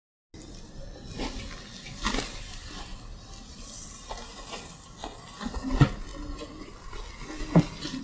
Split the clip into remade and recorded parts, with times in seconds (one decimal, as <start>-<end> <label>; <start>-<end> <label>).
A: 0.0-8.0 recorded